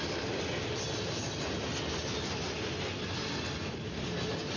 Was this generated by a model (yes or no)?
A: no